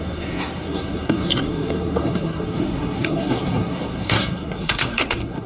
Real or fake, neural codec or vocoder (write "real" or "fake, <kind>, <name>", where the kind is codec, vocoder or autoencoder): fake, codec, SNAC